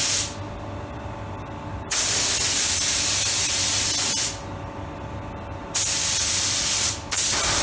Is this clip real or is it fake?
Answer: real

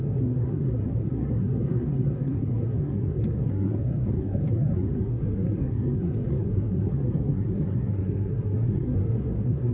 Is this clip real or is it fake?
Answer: fake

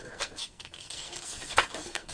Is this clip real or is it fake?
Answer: fake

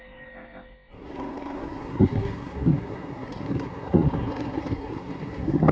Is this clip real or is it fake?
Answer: fake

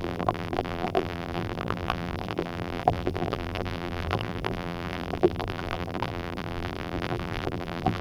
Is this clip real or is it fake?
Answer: fake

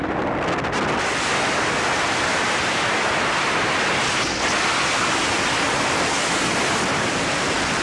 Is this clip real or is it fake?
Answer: real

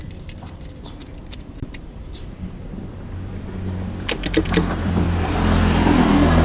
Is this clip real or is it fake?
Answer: fake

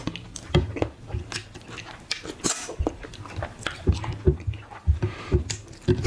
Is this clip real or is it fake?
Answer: real